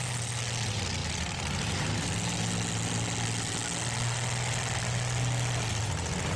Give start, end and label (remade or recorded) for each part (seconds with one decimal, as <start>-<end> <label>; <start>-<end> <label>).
0.0-6.4 recorded